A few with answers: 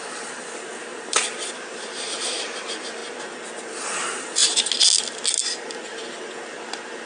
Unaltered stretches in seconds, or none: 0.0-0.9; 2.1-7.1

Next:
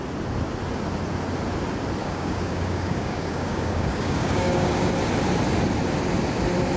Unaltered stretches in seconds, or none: 0.0-2.0; 4.9-6.8

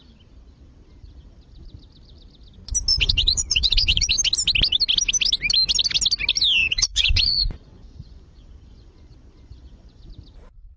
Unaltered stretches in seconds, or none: 0.0-2.9; 4.1-6.6; 10.1-10.8

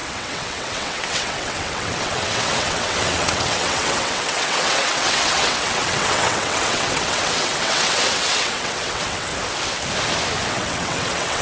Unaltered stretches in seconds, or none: 9.3-10.5

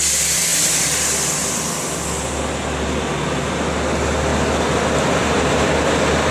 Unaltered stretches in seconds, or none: 0.0-6.3

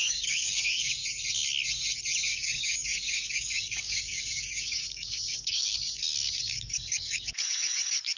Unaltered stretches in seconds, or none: 1.0-2.3

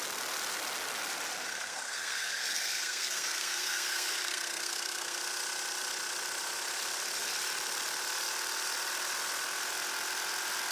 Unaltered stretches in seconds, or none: 0.0-1.5; 5.2-10.7